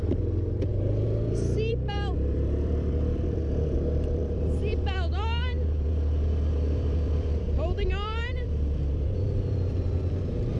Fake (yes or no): yes